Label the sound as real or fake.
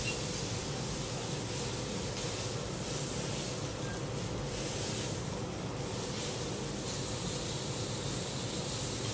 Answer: real